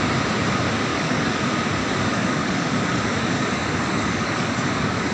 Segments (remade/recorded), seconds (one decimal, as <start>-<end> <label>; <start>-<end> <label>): 0.0-0.9 recorded; 0.9-1.4 remade; 1.4-1.8 recorded; 1.8-5.1 remade